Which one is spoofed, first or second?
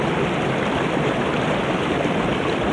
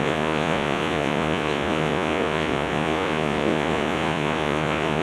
second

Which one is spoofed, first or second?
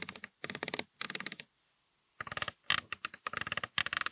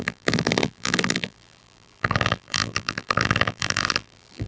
second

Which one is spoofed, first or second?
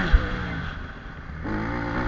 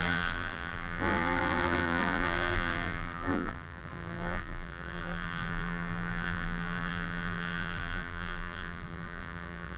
second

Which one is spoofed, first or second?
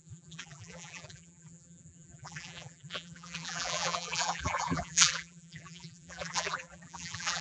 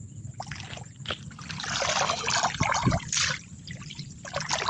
first